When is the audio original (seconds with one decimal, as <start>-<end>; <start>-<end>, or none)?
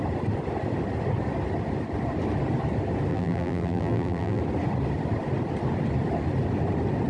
0.0-3.1; 4.4-7.1